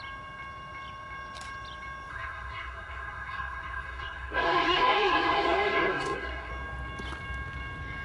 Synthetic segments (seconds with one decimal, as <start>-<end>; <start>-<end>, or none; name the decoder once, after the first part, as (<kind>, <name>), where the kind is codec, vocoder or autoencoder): 2.1-6.5 (codec, SNAC)